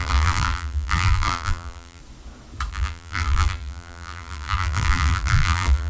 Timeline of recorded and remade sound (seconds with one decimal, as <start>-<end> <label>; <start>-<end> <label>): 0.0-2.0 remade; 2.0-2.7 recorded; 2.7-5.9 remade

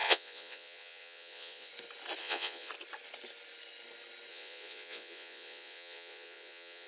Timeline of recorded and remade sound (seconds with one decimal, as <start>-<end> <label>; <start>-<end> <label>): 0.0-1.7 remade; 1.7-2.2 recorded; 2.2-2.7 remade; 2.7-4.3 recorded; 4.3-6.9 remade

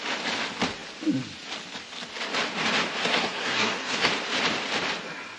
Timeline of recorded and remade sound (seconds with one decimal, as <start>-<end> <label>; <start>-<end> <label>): 0.0-3.0 recorded; 3.0-4.1 remade; 4.1-5.4 recorded